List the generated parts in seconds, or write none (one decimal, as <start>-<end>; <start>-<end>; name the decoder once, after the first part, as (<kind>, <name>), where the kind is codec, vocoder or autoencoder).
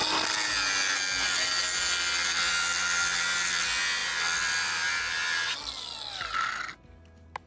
none